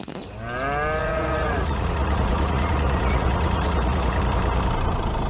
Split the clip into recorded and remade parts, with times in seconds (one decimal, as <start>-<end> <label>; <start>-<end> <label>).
0.0-1.0 recorded; 1.0-4.2 remade; 4.2-5.3 recorded